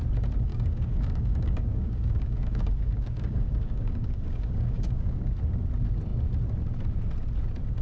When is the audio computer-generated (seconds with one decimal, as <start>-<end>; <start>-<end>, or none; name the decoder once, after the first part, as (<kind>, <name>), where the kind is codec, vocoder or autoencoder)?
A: 0.5-5.2 (codec, DAC)